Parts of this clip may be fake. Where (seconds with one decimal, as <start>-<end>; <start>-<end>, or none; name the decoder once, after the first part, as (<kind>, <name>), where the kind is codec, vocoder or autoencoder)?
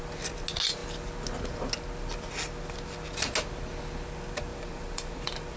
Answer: 4.5-5.6 (vocoder, BigVGAN v2)